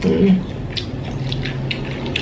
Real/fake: real